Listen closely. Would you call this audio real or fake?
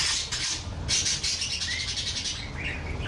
real